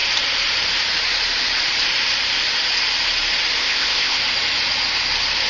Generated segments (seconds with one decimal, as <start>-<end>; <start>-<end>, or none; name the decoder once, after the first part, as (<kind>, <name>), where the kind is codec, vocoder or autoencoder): 3.6-4.2 (codec, ZipCodec)